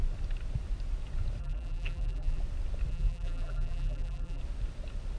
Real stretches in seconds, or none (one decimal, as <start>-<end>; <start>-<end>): 0.0-1.4; 2.4-2.9; 4.4-5.2